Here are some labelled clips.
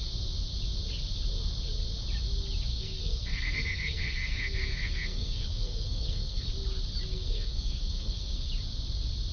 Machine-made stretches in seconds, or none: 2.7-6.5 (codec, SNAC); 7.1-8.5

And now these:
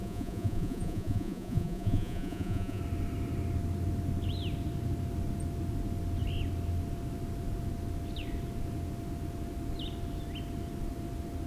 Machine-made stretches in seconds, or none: 0.0-2.8 (vocoder, Vocos)

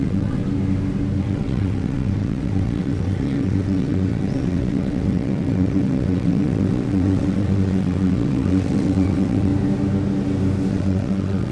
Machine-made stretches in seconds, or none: 0.0-0.4 (vocoder, WaveNeXt); 1.2-9.5; 10.7-11.5

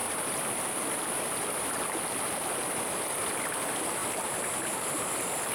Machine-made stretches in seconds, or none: 0.0-2.9 (vocoder, BigVGAN v2); 4.0-5.5

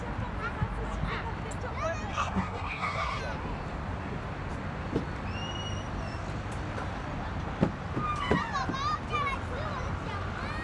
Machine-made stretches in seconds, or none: 2.1-3.2 (codec, SNAC)

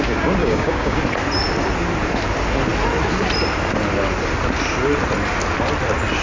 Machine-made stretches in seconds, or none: 0.4-1.0 (codec, DAC)

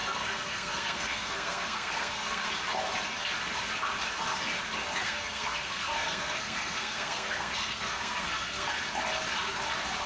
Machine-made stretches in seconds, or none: 0.0-2.5 (codec, SNAC); 5.0-8.8